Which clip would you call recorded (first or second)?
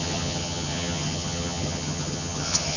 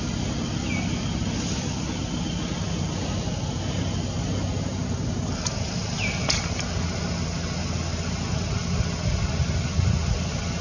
second